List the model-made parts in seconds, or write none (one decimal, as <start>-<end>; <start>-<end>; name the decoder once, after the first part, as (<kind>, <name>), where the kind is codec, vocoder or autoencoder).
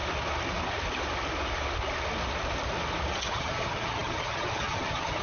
3.1-5.2 (vocoder, HiFi-GAN)